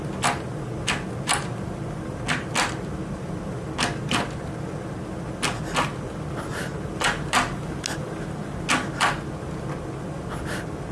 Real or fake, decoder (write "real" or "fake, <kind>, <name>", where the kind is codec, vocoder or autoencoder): real